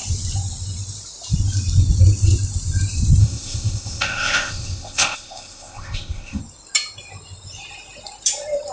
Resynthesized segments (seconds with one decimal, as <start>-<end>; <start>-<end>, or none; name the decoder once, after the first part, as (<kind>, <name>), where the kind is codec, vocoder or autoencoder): 3.2-6.4 (codec, ZipCodec)